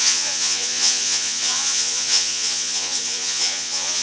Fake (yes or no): yes